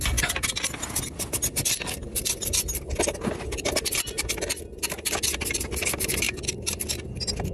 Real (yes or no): yes